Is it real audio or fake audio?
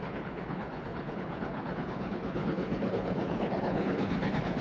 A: fake